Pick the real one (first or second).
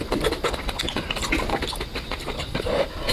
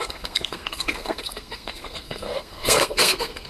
first